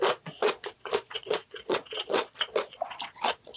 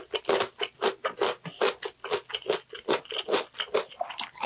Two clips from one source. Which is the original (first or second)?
second